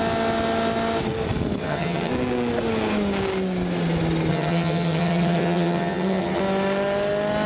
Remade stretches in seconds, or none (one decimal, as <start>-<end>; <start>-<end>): 1.6-2.1; 4.3-6.4

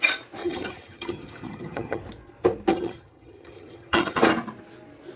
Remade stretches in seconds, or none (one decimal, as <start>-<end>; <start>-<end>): 0.4-2.0; 2.7-4.2